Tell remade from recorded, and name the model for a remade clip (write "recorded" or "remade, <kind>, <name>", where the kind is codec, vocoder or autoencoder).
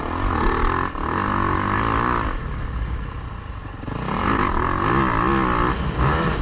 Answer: recorded